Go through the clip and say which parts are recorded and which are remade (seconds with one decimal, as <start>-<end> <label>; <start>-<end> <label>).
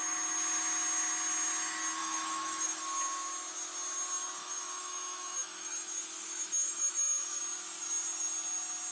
0.0-2.0 recorded; 2.0-2.8 remade; 2.8-4.4 recorded; 4.4-7.4 remade; 7.4-8.9 recorded